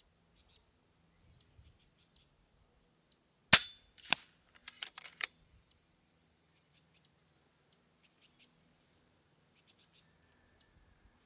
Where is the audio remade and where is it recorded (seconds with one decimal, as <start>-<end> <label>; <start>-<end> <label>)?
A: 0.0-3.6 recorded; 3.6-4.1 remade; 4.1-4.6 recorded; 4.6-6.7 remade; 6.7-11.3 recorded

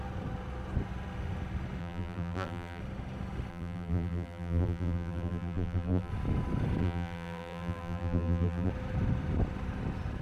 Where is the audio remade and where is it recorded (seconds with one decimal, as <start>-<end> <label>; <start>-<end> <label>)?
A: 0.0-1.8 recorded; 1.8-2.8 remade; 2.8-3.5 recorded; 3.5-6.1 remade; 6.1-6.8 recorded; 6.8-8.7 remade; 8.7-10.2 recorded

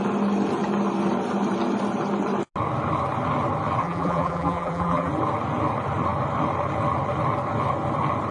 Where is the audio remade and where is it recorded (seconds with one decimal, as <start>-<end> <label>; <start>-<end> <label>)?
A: 0.0-3.8 recorded; 3.8-5.1 remade; 5.1-8.3 recorded

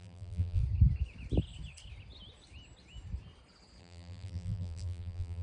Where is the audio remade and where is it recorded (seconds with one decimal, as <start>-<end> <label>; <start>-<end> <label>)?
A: 0.0-0.6 remade; 0.6-3.8 recorded; 3.8-5.4 remade